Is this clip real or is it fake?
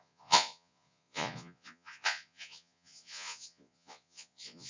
fake